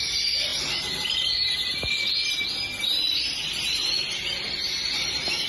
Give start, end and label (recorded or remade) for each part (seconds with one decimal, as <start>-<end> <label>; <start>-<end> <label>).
0.0-5.5 recorded

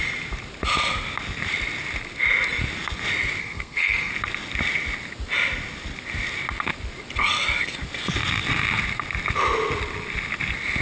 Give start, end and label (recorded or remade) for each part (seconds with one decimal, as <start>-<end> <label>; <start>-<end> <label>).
0.0-3.4 recorded; 3.4-4.1 remade; 4.1-10.8 recorded

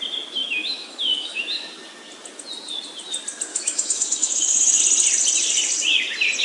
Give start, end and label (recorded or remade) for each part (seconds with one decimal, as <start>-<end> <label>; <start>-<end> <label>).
0.0-0.4 recorded; 0.4-1.7 remade; 1.7-3.5 recorded; 3.5-4.8 remade; 4.8-6.4 recorded

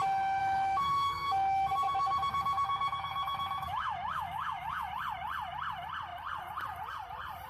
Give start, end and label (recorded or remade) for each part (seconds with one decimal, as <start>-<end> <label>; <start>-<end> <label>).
0.0-0.4 recorded; 0.4-4.9 remade; 4.9-7.5 recorded

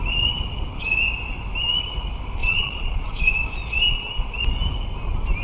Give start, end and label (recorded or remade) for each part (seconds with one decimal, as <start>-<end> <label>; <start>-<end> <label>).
0.0-2.4 recorded; 2.4-3.4 remade; 3.4-5.4 recorded